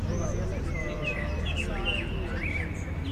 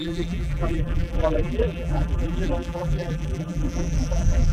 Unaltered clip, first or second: first